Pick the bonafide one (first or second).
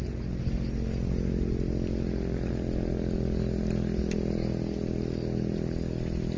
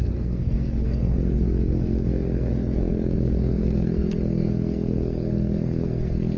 first